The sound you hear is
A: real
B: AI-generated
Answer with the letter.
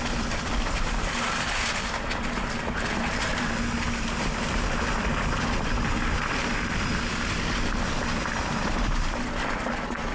A